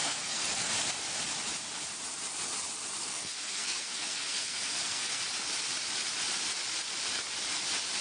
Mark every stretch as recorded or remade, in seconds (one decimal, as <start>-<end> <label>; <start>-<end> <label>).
0.0-0.7 remade; 0.7-3.0 recorded; 3.0-5.2 remade; 5.2-8.0 recorded